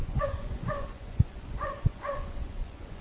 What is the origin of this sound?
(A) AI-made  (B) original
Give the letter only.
A